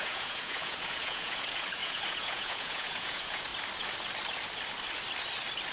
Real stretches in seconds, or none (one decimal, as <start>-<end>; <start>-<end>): 3.5-5.7